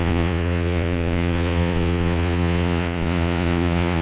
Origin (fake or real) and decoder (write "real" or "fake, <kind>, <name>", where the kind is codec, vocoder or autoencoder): fake, vocoder, Vocos